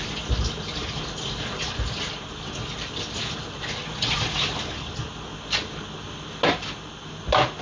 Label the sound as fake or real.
real